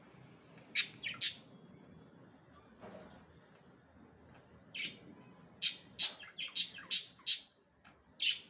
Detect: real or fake real